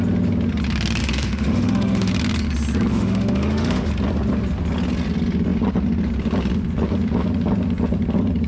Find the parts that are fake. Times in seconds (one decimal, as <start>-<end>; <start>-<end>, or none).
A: 1.0-2.1; 2.9-3.9